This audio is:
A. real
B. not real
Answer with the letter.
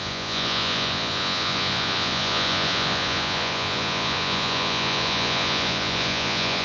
B